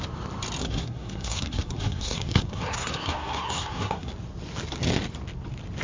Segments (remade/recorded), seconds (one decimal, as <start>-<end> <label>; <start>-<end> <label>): 0.0-0.6 recorded; 0.6-4.1 remade; 4.1-5.8 recorded